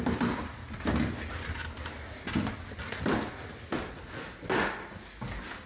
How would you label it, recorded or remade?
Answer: recorded